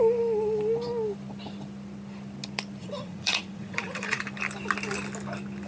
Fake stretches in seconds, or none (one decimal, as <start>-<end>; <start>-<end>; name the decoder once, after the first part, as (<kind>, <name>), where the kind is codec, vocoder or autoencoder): 2.8-4.2 (vocoder, Vocos)